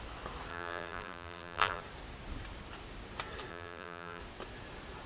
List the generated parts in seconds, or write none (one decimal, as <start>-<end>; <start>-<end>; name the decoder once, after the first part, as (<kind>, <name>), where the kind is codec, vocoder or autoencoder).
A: 0.5-1.8 (vocoder, BigVGAN v2); 3.5-4.2